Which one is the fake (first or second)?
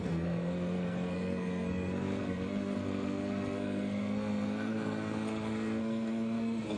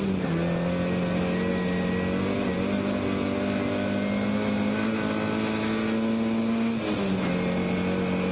first